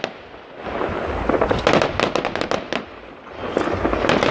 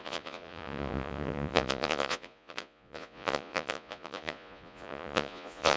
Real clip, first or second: first